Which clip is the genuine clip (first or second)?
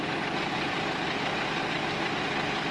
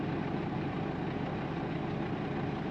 first